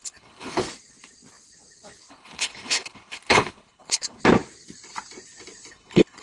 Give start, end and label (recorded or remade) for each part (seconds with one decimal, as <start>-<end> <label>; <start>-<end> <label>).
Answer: 0.0-0.6 remade; 0.6-2.1 recorded; 2.1-4.2 remade; 4.2-5.7 recorded; 5.7-6.2 remade